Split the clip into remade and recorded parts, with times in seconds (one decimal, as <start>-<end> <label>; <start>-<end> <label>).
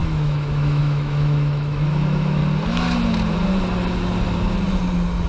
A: 0.0-2.4 remade; 2.4-5.3 recorded